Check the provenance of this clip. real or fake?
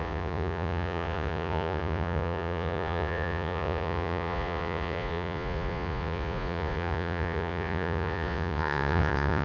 fake